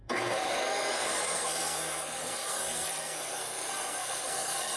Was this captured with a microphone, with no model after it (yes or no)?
no